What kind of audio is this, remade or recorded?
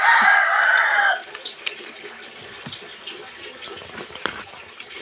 remade